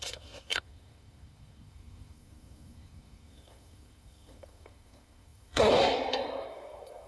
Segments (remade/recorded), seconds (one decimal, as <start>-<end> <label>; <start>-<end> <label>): 0.0-7.1 remade